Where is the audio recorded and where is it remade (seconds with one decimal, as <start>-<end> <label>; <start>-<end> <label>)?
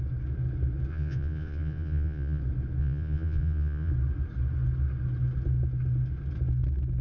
0.0-0.9 recorded; 0.9-2.4 remade; 2.4-2.8 recorded; 2.8-3.9 remade; 3.9-7.0 recorded